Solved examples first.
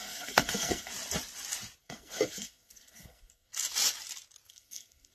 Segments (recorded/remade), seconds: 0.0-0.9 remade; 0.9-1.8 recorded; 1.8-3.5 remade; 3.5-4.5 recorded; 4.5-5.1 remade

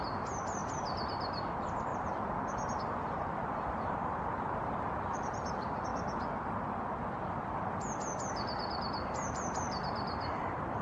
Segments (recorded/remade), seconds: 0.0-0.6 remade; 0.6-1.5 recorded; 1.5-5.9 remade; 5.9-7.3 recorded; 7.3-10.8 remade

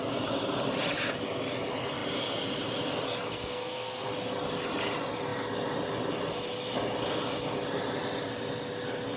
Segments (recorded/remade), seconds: 0.0-3.3 recorded; 3.3-4.1 remade; 4.1-9.2 recorded

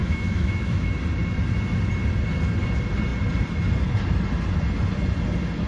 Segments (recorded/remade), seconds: 0.0-0.9 remade; 0.9-5.7 recorded